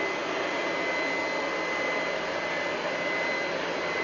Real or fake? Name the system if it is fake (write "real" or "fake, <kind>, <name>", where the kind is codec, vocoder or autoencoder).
real